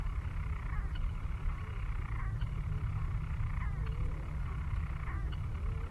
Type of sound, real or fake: real